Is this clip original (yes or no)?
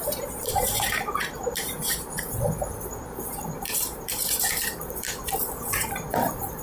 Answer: no